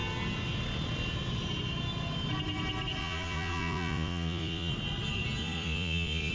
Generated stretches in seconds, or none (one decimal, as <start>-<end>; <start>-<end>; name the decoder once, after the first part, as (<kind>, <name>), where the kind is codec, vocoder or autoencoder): 3.0-4.7 (vocoder, Vocos); 5.4-6.3